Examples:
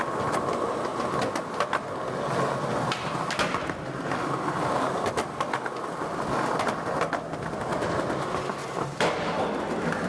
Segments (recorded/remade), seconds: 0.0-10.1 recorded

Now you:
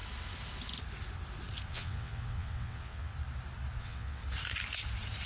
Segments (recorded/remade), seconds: 0.0-1.7 recorded; 1.7-3.1 remade; 3.1-3.8 recorded; 3.8-4.2 remade; 4.2-5.3 recorded